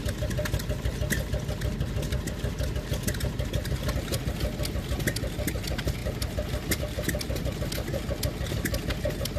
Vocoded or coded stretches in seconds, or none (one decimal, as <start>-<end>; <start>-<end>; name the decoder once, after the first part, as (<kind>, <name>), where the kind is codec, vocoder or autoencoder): none